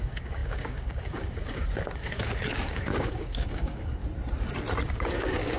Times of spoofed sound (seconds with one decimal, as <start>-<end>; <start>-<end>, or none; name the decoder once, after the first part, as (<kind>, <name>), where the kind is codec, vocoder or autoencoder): 0.0-4.0 (codec, DAC); 5.0-5.6

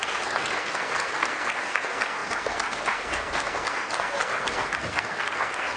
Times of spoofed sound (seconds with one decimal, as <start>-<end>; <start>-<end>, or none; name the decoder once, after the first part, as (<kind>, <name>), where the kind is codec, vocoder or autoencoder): 0.0-5.8 (codec, SNAC)